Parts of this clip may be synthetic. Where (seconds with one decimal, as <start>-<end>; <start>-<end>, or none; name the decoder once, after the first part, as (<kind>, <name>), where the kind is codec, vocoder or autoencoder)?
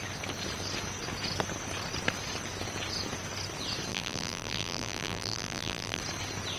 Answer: 3.9-6.0 (vocoder, BigVGAN v2)